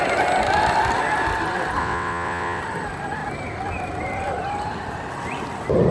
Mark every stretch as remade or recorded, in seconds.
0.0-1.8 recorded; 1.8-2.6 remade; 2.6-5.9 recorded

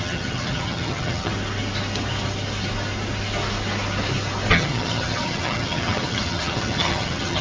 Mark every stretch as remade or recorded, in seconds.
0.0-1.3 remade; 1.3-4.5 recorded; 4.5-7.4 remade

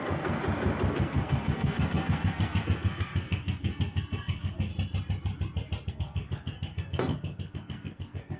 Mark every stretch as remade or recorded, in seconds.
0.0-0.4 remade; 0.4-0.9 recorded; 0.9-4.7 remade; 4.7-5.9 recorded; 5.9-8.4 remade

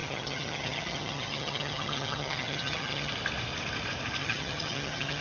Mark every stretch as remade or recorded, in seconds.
0.0-3.1 remade; 3.1-4.2 recorded; 4.2-5.2 remade

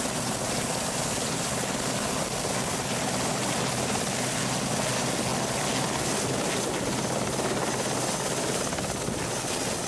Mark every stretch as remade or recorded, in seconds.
0.0-9.9 recorded

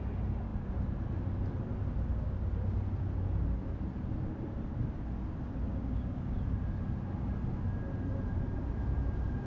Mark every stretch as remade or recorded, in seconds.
0.0-5.7 recorded; 5.7-6.4 remade; 6.4-9.5 recorded